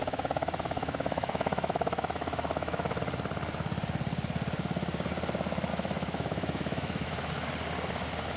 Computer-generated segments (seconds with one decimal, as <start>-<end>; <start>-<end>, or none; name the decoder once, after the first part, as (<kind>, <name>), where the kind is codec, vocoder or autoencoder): 0.0-3.0 (autoencoder, DAC-VAE); 5.7-7.3

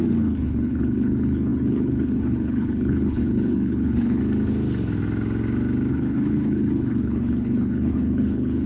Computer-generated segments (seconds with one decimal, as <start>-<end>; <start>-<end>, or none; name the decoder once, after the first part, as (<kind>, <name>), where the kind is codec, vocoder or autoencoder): 0.0-4.2 (codec, HILCodec); 5.9-8.7

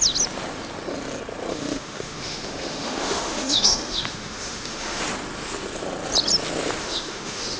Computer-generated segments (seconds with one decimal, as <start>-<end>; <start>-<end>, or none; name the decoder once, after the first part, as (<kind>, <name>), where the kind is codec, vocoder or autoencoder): 1.5-5.0 (autoencoder, DAC-VAE); 6.8-7.6

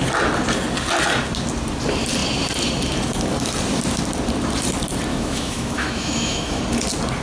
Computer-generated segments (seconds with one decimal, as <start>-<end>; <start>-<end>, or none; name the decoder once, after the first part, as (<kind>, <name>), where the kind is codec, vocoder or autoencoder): 5.1-6.6 (autoencoder, DAC-VAE)

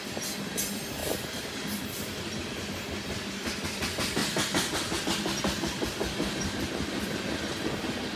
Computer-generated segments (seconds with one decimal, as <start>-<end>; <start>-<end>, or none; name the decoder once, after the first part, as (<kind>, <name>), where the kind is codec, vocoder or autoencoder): 1.0-2.4 (vocoder, BigVGAN v2)

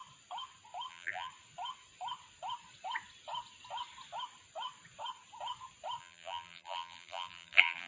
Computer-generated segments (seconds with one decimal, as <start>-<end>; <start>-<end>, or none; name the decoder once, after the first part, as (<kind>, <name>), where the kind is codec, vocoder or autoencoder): 0.9-1.3 (vocoder, BigVGAN v2); 6.0-7.9